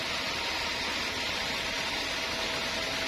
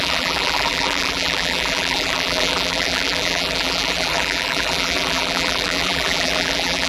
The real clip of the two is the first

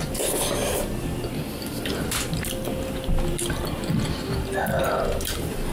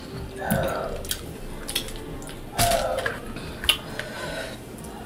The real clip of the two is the second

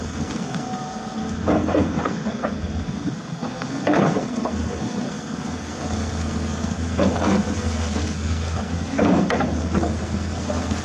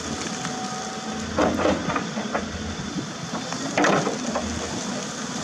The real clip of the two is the second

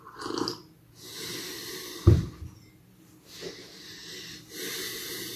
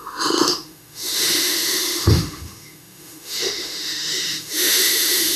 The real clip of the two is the first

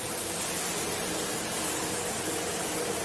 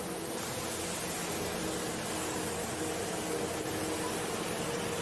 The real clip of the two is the second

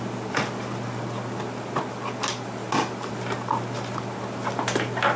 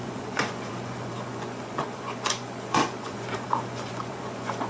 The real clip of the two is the first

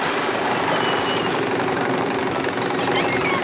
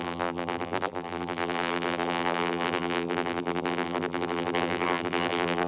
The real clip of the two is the first